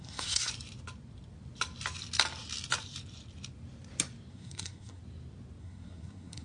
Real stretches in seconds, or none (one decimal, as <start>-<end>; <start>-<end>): 0.5-4.3; 5.0-5.6